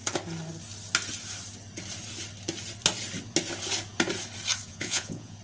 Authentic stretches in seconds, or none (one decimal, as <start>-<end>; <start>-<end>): 0.0-4.7